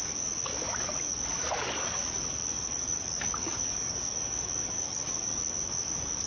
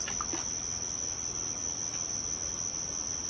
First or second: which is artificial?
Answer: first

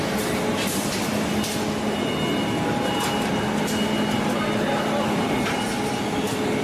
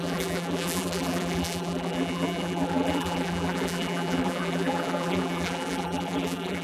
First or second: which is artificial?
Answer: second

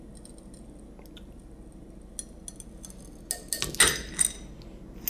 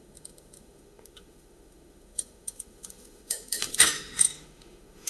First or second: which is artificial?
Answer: second